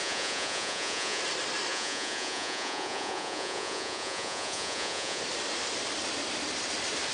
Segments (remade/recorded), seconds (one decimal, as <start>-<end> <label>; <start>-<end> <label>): 0.0-1.2 remade; 1.2-1.7 recorded; 1.7-5.2 remade; 5.2-7.1 recorded